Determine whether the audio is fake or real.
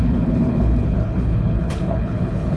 fake